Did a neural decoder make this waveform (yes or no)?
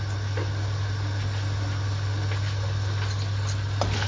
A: no